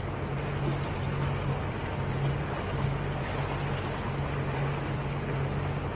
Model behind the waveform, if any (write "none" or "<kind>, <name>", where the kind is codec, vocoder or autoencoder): none